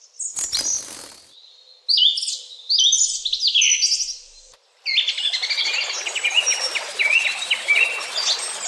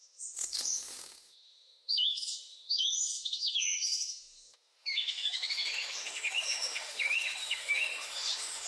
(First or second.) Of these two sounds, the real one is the first